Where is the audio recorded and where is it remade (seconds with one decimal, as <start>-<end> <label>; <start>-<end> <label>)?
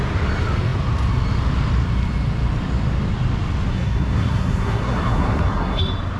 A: 0.0-3.7 recorded; 3.7-5.8 remade; 5.8-6.2 recorded